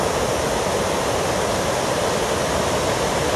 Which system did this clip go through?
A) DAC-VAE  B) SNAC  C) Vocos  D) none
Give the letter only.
D